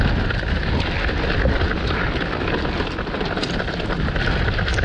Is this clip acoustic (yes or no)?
yes